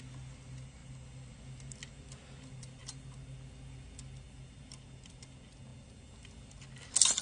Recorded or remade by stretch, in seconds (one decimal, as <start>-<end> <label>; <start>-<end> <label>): 0.0-7.2 recorded